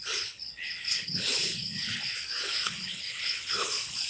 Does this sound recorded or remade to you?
remade